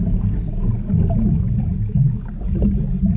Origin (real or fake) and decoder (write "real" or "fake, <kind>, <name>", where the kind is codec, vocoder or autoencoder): real